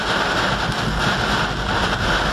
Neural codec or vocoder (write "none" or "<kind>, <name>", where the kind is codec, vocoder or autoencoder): none